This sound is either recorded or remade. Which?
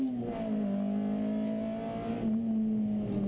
recorded